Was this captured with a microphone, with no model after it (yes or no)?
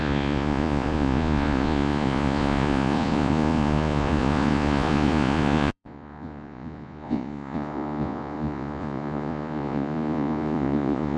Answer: no